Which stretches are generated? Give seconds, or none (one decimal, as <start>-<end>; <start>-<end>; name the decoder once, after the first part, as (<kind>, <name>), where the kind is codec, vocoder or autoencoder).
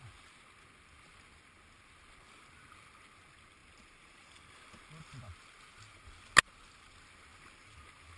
none